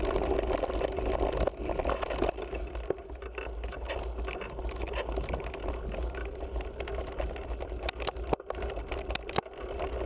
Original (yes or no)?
yes